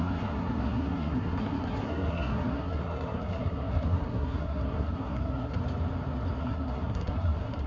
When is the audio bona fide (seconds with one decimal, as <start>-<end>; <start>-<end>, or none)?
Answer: 5.6-6.4